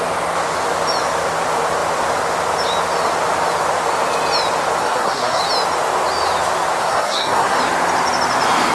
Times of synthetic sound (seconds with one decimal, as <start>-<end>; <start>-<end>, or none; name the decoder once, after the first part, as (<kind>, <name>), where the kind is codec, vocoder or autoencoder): 4.8-5.4 (codec, SNAC); 6.8-7.6